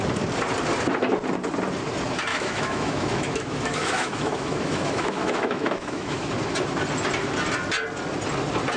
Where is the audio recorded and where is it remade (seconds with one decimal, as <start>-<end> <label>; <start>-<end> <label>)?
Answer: 0.0-2.3 recorded; 2.3-6.3 remade; 6.3-8.8 recorded